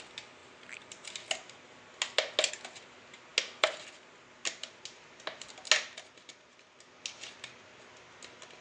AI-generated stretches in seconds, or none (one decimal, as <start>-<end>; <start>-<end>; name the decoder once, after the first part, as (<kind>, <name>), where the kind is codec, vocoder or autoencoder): none